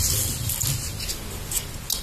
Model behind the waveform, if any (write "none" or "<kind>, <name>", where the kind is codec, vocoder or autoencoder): none